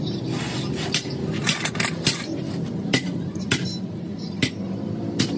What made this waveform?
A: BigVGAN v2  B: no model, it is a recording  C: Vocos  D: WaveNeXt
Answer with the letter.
B